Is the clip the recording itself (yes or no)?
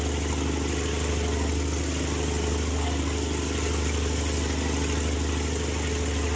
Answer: yes